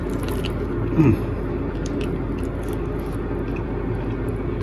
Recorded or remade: recorded